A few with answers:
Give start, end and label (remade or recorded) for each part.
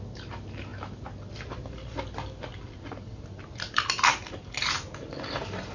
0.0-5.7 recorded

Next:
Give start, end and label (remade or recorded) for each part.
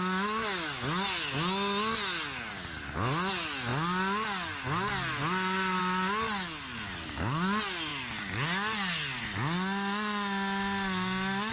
0.0-11.5 recorded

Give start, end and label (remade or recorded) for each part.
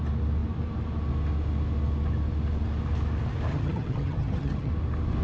0.0-3.5 recorded; 3.5-4.7 remade; 4.7-5.2 recorded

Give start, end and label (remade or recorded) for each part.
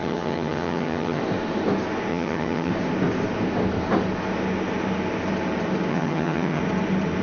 0.0-1.2 remade; 1.2-2.1 recorded; 2.1-2.7 remade; 2.7-5.9 recorded; 5.9-6.6 remade; 6.6-7.2 recorded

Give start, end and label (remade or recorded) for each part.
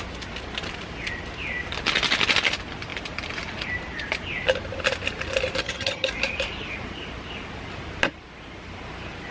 0.0-5.6 recorded; 5.6-6.1 remade; 6.1-9.3 recorded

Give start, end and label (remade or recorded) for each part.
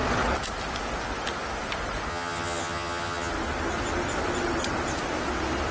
0.0-2.1 recorded; 2.1-3.3 remade; 3.3-5.7 recorded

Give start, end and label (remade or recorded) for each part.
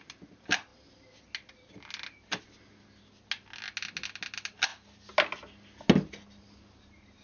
0.0-7.2 recorded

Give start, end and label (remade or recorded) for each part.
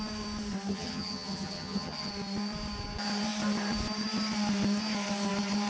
0.0-0.7 recorded; 0.7-2.1 remade; 2.1-5.7 recorded